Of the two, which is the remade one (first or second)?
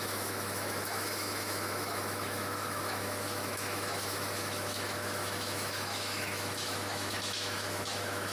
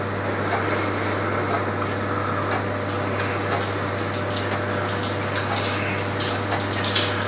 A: first